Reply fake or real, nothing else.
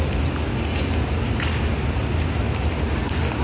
real